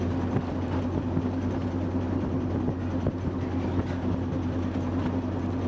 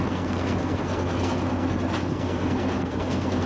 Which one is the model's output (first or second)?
second